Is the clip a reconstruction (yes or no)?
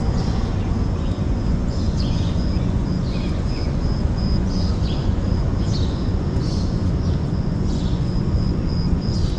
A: yes